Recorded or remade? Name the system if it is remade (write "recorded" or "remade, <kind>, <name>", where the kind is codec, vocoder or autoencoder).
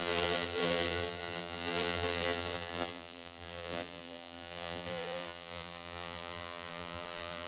remade, vocoder, BigVGAN v2